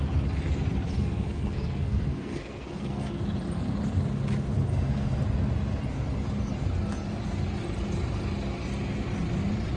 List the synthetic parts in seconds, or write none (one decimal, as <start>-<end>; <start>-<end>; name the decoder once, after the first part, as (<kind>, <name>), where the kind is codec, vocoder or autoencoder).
1.0-3.2 (codec, SNAC); 4.7-5.2